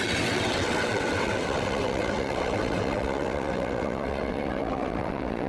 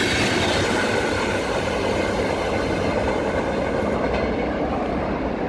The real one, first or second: second